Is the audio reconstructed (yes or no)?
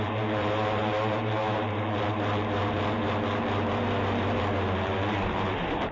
yes